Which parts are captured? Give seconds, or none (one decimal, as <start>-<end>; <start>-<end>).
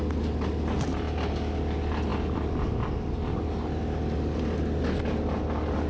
0.0-5.9